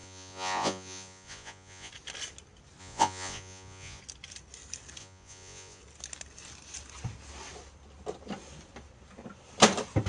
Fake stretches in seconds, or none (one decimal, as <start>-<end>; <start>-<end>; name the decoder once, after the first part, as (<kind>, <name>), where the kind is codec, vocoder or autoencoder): 0.0-1.9 (vocoder, Vocos); 2.8-4.0; 5.0-5.8

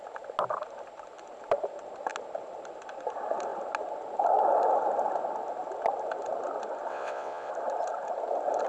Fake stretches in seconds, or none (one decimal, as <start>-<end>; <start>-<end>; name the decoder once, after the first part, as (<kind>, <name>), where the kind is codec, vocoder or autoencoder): 6.9-7.5 (vocoder, WaveNeXt)

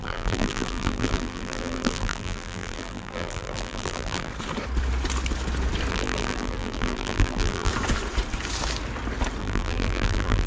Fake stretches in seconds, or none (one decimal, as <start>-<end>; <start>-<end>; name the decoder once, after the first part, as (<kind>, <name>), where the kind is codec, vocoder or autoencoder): 0.0-4.3 (vocoder, BigVGAN v2); 5.9-7.7; 9.4-10.5

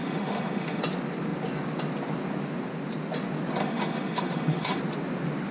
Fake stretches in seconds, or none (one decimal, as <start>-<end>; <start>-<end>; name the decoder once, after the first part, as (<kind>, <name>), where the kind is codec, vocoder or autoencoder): 0.0-0.8 (autoencoder, DAC-VAE); 3.6-4.8